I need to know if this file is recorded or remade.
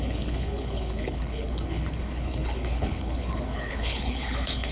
remade